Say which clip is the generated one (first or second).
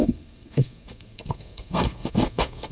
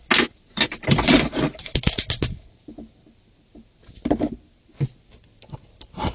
first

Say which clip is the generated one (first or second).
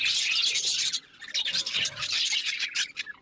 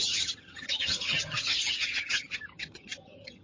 second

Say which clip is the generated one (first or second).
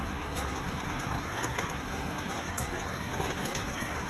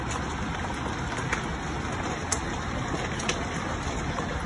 first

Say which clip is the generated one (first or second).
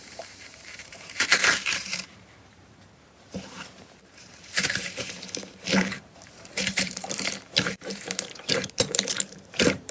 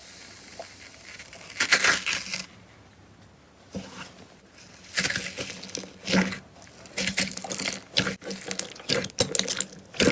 first